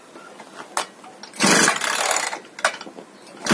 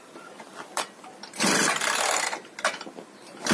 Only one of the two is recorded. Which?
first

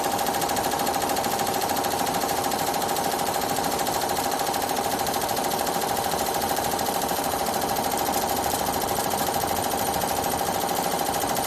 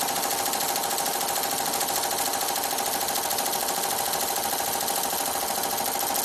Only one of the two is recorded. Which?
second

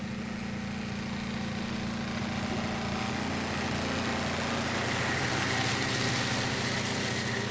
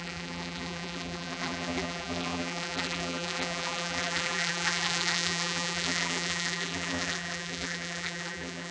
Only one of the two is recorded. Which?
first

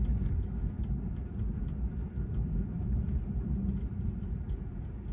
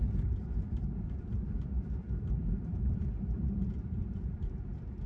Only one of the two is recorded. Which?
first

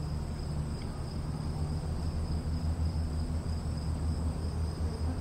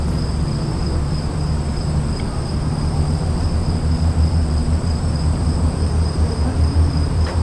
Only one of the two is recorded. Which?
first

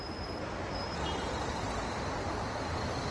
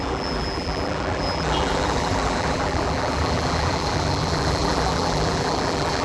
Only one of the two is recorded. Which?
first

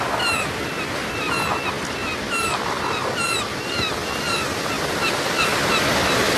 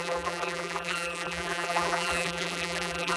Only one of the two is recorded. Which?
first